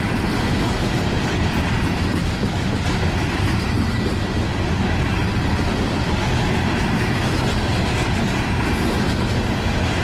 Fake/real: real